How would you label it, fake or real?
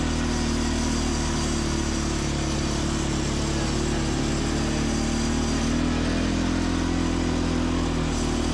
real